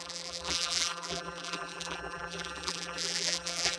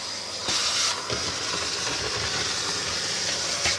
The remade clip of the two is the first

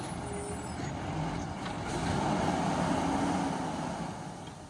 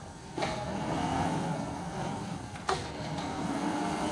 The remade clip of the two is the second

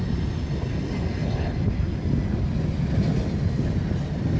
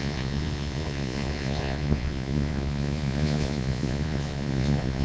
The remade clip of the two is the second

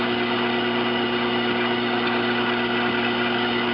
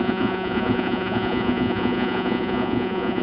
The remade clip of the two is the second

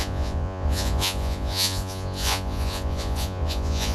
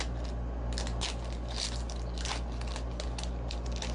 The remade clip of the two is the first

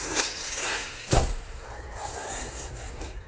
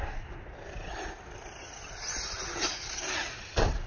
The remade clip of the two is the first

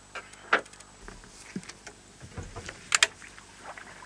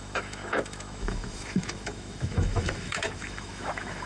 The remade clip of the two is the second